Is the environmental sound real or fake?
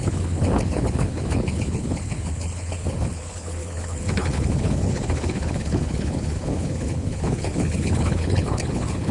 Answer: fake